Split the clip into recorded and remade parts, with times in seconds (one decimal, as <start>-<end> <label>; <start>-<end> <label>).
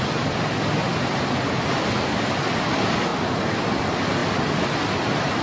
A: 0.0-5.4 recorded